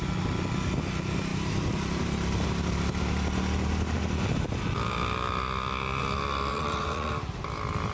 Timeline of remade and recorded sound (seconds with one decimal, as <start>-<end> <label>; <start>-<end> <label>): 0.0-6.5 recorded; 6.5-7.1 remade; 7.1-7.9 recorded